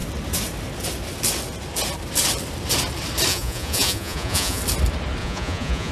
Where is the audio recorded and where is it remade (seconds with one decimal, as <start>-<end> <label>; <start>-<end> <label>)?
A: 0.0-3.3 recorded; 3.3-4.6 remade; 4.6-5.2 recorded; 5.2-5.9 remade